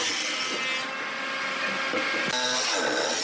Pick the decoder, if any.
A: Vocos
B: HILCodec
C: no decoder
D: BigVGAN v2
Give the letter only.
C